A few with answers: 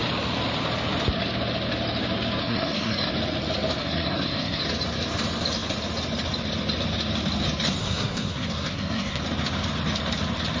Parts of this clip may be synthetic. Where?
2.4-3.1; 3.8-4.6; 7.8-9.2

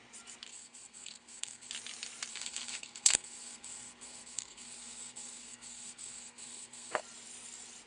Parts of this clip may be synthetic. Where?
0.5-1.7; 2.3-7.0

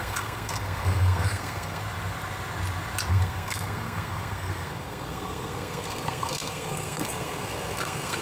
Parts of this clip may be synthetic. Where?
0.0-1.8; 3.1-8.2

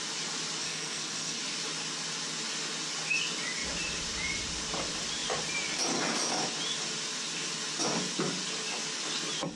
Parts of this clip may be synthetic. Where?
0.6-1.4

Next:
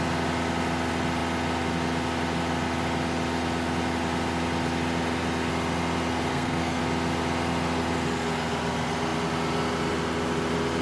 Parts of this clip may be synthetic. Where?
6.3-6.8

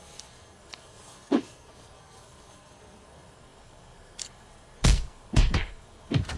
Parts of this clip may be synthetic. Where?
0.0-6.4

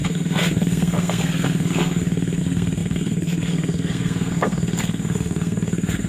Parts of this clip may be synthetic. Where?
0.0-6.1

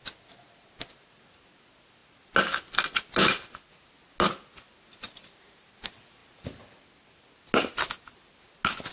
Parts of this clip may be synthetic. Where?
none